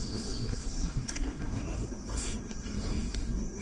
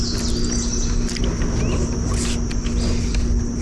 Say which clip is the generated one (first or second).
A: first